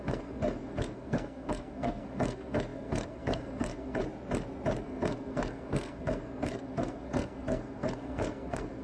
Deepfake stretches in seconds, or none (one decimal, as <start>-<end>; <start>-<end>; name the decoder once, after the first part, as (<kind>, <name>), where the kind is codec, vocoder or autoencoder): 0.0-4.0 (codec, SNAC); 4.8-8.8